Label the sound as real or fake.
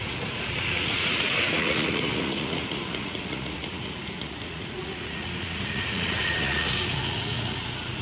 fake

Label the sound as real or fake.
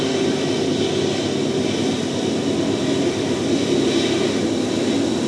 real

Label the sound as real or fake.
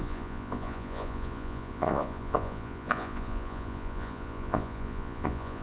fake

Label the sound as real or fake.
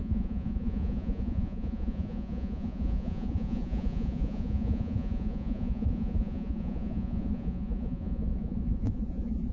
fake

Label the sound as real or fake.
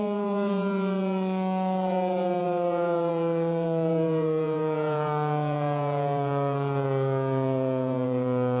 fake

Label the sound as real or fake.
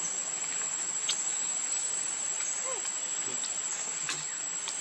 real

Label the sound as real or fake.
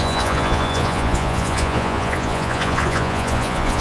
fake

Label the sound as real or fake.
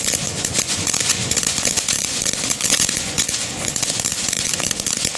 fake